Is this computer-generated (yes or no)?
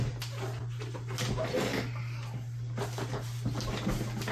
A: no